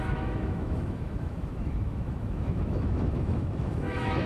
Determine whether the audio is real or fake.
fake